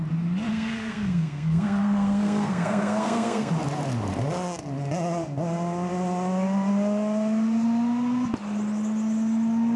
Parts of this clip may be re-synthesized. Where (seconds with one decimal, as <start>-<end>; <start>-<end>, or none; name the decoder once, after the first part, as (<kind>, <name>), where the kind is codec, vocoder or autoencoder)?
0.5-3.5 (codec, SNAC)